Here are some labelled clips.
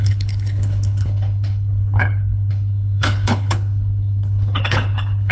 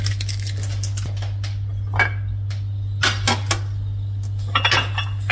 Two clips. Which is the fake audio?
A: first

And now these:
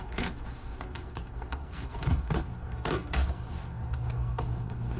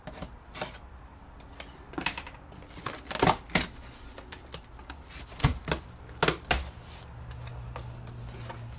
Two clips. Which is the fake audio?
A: first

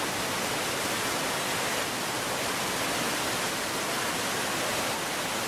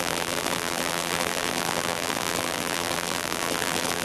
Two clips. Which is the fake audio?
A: second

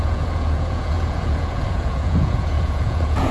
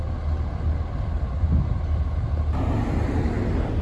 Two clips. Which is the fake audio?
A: first